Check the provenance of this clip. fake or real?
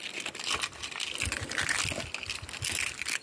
real